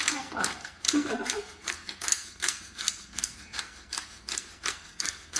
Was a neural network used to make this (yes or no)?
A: yes